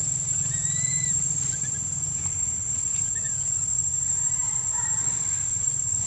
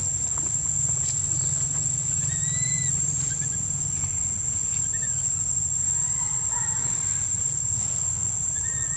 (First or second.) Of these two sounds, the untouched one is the second